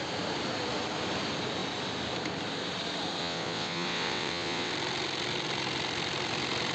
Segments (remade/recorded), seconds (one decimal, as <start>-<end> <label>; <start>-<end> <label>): 0.0-3.2 recorded; 3.2-4.7 remade; 4.7-6.7 recorded